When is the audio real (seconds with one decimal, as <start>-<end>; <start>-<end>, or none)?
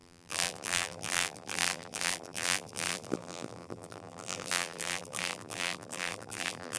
none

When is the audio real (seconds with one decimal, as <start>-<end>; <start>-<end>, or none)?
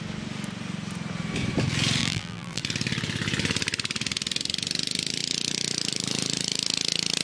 0.0-2.0; 2.6-7.2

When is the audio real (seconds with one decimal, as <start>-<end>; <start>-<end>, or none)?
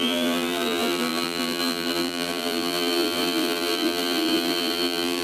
none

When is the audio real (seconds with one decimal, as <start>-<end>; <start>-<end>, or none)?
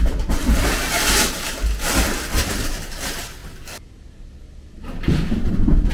3.4-5.5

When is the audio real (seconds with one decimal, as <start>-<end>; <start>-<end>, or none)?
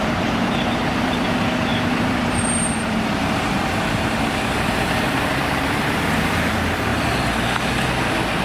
6.9-8.4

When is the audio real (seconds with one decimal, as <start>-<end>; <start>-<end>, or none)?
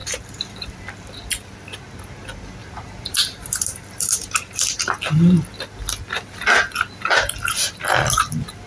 0.8-2.6; 5.0-8.7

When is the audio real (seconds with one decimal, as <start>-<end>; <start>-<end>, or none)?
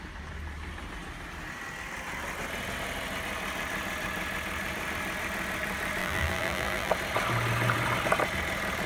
0.0-6.0; 6.9-8.9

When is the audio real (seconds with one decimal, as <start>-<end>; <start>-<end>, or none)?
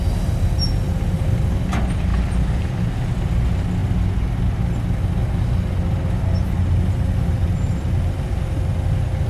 0.0-2.1; 3.0-7.4; 8.6-9.3